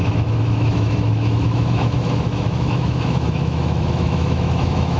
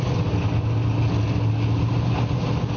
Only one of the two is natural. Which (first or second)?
second